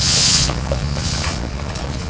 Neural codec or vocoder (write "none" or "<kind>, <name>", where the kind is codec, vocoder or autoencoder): vocoder, Vocos